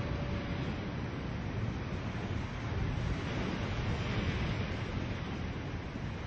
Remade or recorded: recorded